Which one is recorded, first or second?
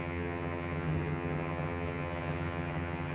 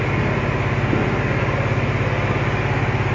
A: second